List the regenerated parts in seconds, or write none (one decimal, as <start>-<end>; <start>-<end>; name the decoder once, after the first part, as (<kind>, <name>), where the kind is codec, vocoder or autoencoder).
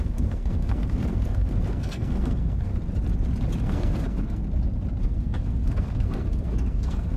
0.0-2.7 (codec, SNAC); 3.6-4.4; 5.0-7.2